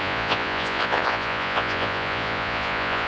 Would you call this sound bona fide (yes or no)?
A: no